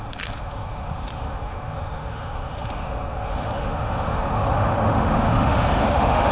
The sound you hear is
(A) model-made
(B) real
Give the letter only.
A